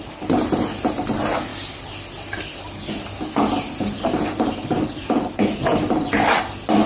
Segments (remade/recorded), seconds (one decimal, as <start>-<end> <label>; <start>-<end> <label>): 0.0-6.9 recorded